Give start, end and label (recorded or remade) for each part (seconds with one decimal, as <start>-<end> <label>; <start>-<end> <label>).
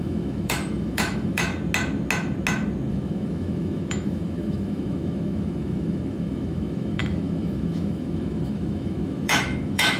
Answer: 0.0-1.5 remade; 1.5-2.9 recorded; 2.9-10.0 remade